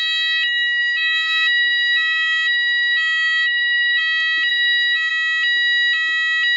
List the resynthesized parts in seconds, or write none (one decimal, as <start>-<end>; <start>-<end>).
0.8-4.0; 4.5-5.1